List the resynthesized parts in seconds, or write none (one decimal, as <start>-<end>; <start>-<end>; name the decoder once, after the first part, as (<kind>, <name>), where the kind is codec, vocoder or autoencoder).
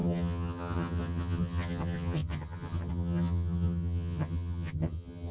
0.0-5.3 (vocoder, HiFi-GAN)